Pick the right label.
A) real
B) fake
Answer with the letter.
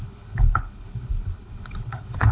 B